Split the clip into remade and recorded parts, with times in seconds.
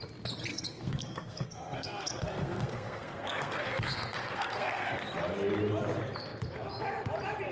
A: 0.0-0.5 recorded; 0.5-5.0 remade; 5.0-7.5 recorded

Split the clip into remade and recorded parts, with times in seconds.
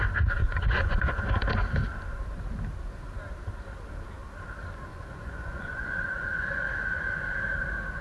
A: 0.0-0.4 recorded; 0.4-1.2 remade; 1.2-4.9 recorded; 4.9-7.2 remade; 7.2-8.0 recorded